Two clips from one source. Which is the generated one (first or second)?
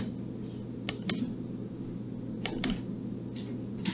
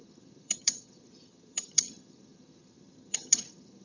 second